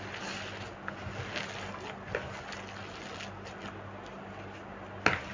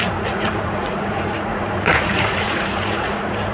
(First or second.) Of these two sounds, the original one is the first